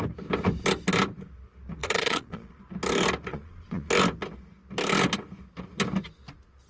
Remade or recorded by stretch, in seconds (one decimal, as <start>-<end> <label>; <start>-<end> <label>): 0.0-1.8 recorded; 1.8-2.6 remade; 2.6-3.3 recorded; 3.3-3.9 remade; 3.9-6.7 recorded